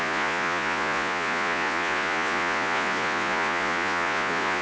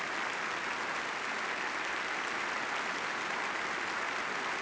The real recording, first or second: second